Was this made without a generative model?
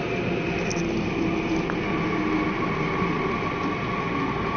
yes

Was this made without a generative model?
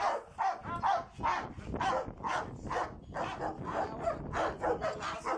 yes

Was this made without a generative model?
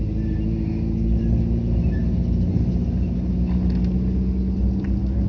yes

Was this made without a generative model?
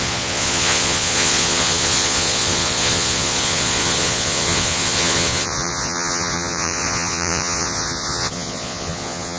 no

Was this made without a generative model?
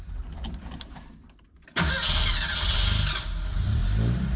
yes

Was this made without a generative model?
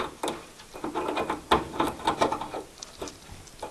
yes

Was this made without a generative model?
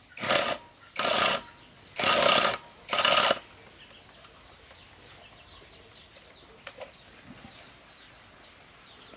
yes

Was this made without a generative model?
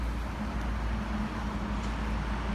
yes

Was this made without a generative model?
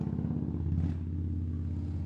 yes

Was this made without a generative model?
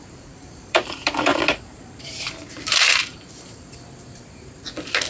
no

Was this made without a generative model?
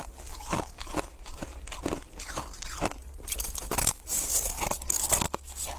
yes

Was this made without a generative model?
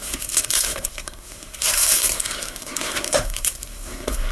no